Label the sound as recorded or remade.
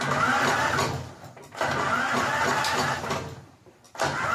recorded